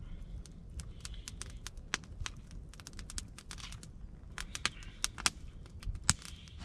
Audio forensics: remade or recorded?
recorded